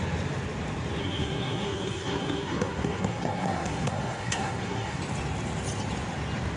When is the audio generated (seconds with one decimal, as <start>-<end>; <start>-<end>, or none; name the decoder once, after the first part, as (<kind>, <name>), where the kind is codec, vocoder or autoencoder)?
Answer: 1.0-5.0 (codec, SNAC)